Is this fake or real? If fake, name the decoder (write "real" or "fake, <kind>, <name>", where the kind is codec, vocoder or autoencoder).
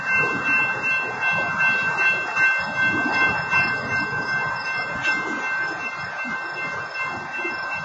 real